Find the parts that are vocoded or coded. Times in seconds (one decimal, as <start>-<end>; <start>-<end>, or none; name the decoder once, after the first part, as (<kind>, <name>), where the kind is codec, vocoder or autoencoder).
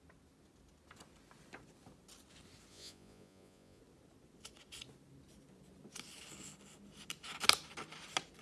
2.7-3.8 (vocoder, Vocos)